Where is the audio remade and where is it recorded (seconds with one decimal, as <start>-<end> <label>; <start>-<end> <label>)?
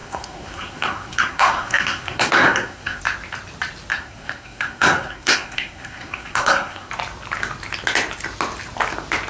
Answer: 0.0-3.0 remade; 3.0-3.9 recorded; 3.9-6.9 remade; 6.9-9.3 recorded